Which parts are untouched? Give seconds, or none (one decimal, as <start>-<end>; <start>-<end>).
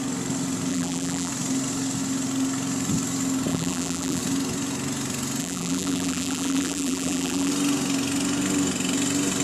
0.0-0.7; 1.3-3.5; 4.2-5.4; 7.5-9.4